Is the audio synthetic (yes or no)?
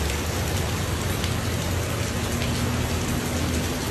no